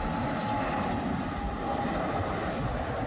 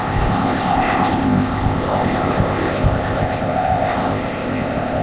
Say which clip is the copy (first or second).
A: second